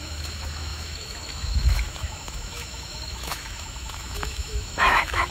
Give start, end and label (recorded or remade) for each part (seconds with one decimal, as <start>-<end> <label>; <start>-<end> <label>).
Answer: 0.0-5.3 remade